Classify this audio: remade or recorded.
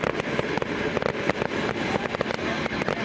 recorded